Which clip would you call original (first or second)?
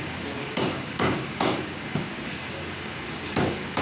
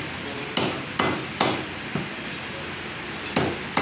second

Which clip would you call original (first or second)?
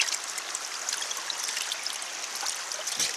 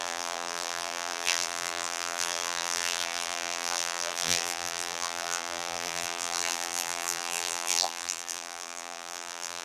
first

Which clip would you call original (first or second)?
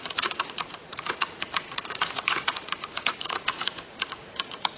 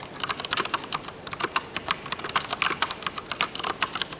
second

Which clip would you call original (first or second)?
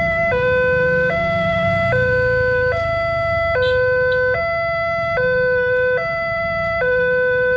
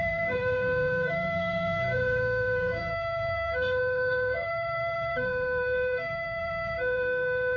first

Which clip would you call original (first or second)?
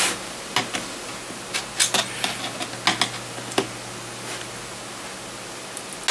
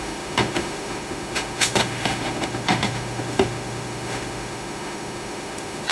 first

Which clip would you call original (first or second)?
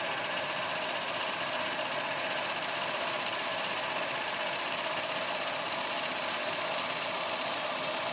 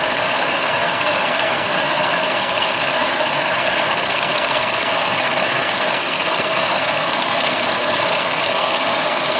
first